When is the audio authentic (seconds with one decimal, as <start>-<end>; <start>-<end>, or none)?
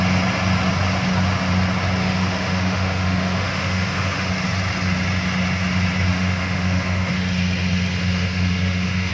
0.0-2.0; 4.3-6.1; 7.2-8.0